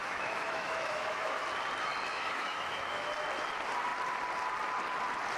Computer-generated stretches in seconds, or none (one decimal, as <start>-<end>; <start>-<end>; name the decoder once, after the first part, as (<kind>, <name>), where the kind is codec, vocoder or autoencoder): 0.0-1.4 (autoencoder, DAC-VAE); 2.1-3.1